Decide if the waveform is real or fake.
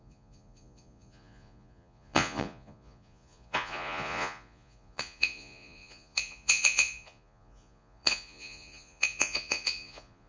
fake